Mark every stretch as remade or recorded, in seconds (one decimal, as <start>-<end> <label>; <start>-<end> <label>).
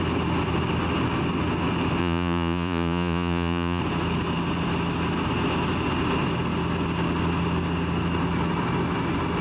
0.0-2.0 recorded; 2.0-3.8 remade; 3.8-9.4 recorded